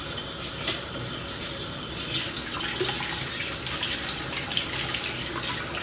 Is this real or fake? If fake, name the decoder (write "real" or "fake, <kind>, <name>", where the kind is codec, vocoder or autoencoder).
real